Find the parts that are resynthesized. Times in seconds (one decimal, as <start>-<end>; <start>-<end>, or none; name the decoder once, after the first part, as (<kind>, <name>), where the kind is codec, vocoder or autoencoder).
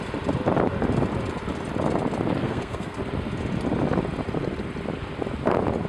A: 2.4-3.0 (codec, SNAC)